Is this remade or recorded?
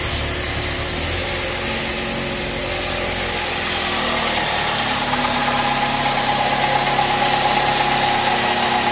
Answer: recorded